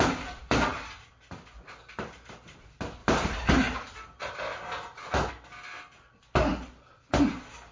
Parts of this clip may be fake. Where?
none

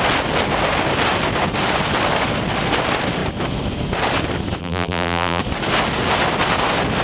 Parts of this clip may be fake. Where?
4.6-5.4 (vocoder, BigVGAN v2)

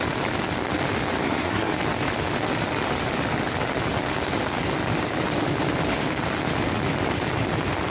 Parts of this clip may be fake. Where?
1.2-1.7 (codec, SNAC)

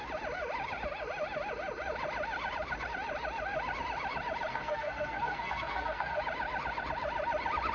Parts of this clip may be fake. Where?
4.5-6.2 (codec, SNAC)